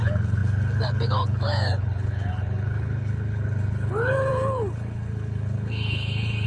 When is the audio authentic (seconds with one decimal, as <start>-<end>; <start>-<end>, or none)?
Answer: none